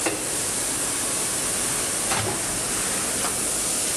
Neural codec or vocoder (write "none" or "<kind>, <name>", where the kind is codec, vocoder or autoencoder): none